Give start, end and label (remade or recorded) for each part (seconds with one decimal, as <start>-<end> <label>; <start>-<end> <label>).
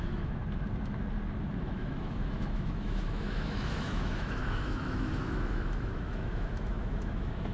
0.0-0.4 remade; 0.4-1.6 recorded; 1.6-7.5 remade